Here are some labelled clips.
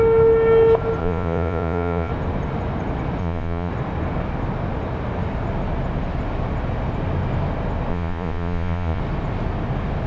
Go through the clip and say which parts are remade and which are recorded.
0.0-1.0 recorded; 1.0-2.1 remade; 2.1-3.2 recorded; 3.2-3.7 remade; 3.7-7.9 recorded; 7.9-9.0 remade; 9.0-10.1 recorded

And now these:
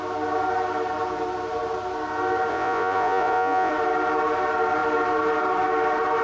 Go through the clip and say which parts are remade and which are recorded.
0.0-2.5 recorded; 2.5-3.7 remade; 3.7-6.2 recorded

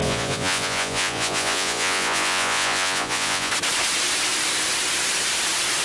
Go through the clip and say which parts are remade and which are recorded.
0.0-3.5 remade; 3.5-5.8 recorded